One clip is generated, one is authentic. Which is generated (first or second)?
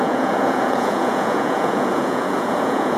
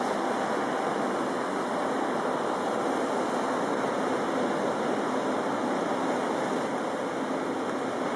first